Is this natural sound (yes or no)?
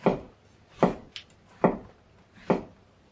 yes